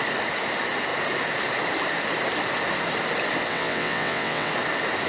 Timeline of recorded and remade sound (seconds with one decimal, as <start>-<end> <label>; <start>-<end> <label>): 0.0-3.5 recorded; 3.5-4.5 remade; 4.5-5.1 recorded